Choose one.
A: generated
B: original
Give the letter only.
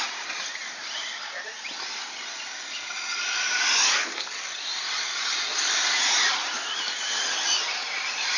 B